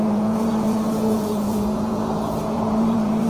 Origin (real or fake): fake